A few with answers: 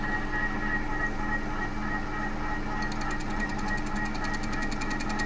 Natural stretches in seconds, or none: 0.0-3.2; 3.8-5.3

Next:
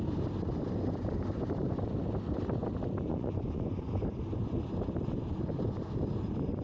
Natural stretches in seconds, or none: 0.0-3.1; 3.7-6.6

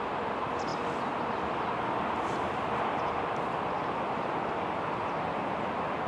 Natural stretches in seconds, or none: 0.0-6.1

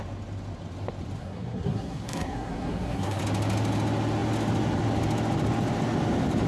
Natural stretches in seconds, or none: 0.0-1.2; 3.2-6.5

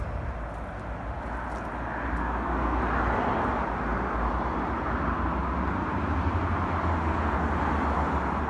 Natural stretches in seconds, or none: 0.0-2.2; 2.8-8.5